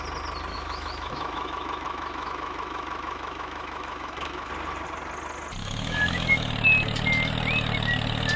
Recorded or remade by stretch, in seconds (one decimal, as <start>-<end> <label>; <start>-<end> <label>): 0.0-0.5 recorded; 0.5-4.5 remade; 4.5-5.6 recorded; 5.6-6.5 remade; 6.5-8.4 recorded